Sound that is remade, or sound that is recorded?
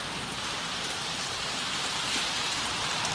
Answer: remade